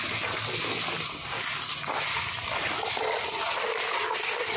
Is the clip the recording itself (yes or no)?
yes